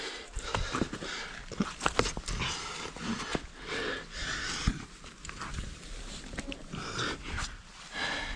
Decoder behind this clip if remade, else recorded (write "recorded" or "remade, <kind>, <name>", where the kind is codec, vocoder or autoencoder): recorded